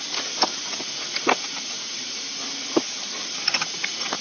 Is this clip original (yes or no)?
yes